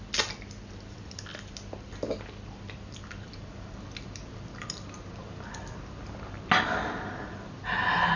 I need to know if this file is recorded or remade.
recorded